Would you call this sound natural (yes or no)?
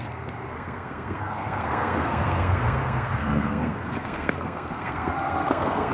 no